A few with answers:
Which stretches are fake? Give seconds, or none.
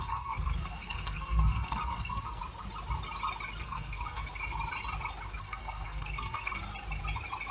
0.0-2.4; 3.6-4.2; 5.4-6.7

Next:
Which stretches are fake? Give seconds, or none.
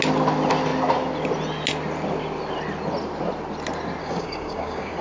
4.0-5.0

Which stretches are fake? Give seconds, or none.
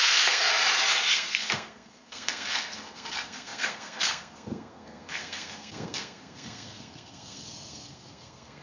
0.0-0.4; 1.1-8.6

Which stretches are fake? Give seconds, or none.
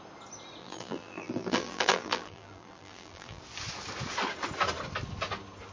0.6-3.4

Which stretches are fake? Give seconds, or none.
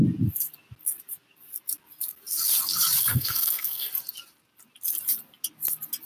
3.1-3.9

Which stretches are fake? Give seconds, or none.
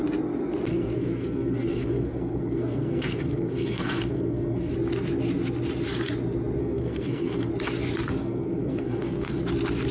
0.7-4.7; 6.6-7.5; 8.2-9.4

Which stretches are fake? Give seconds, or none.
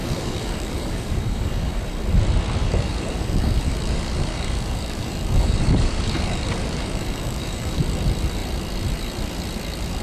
0.0-1.8; 2.6-7.8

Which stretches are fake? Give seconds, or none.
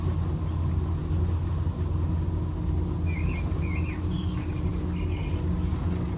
none